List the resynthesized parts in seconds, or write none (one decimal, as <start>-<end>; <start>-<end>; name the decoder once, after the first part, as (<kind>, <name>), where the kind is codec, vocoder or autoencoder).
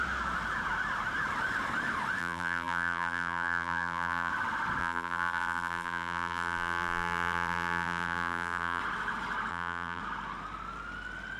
2.2-4.3 (vocoder, BigVGAN v2); 4.8-8.8; 9.5-10.0